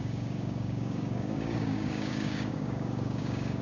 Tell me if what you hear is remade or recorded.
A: remade